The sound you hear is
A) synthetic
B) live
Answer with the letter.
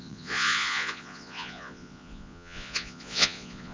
A